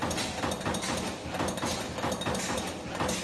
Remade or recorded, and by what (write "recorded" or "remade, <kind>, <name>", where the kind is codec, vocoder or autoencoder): recorded